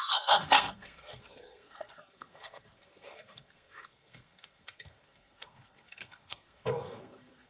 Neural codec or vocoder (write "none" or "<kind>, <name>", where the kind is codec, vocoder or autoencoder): codec, SNAC